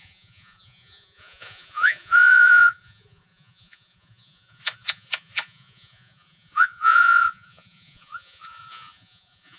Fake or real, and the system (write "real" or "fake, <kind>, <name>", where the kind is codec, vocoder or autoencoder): fake, vocoder, Vocos